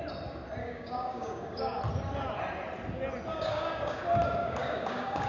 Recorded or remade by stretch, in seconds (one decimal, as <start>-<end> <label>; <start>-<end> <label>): 0.0-0.6 recorded; 0.6-1.8 remade; 1.8-3.3 recorded; 3.3-4.0 remade; 4.0-4.4 recorded; 4.4-5.3 remade